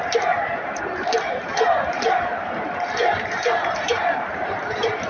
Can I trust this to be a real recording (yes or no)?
no